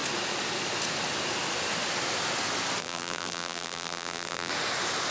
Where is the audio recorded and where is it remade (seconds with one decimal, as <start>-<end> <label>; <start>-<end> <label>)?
0.0-2.8 recorded; 2.8-4.5 remade; 4.5-5.1 recorded